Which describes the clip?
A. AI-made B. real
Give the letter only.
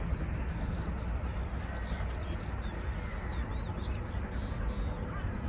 B